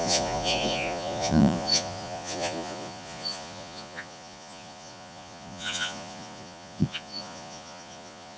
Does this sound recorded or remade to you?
remade